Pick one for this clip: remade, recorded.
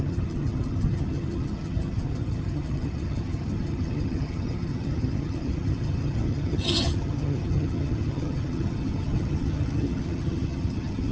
remade